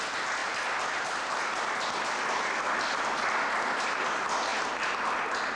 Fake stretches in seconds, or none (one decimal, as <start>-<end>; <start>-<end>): none